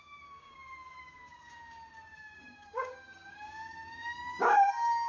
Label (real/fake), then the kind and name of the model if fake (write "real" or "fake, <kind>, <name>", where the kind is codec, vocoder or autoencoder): fake, codec, DAC